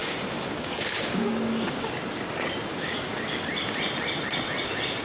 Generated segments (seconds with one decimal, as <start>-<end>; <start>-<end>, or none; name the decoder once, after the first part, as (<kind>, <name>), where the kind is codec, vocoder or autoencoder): 0.0-1.9 (codec, DAC); 2.7-3.5